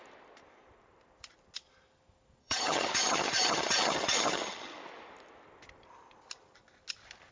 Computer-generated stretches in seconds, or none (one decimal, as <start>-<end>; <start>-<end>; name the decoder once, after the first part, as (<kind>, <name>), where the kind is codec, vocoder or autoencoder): 2.4-4.8 (vocoder, HiFi-GAN)